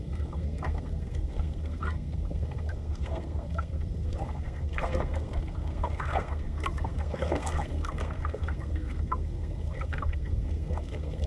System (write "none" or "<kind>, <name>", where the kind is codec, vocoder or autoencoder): codec, SNAC